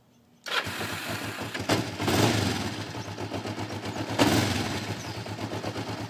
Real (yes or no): yes